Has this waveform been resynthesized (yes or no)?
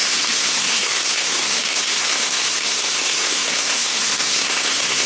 yes